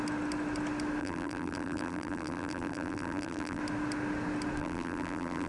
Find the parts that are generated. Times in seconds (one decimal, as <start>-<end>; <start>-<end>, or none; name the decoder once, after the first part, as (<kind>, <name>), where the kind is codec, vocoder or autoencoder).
1.0-3.6 (vocoder, BigVGAN v2); 4.6-5.5